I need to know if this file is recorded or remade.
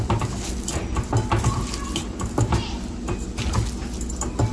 recorded